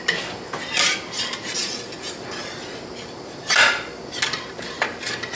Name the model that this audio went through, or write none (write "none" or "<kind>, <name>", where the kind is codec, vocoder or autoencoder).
none